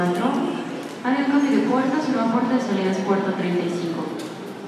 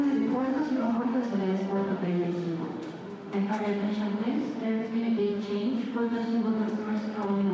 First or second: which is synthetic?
second